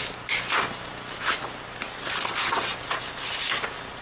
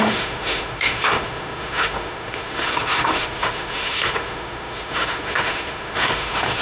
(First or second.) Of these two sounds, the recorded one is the first